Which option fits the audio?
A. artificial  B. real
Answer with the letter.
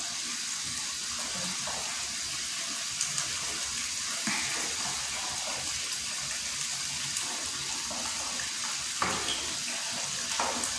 B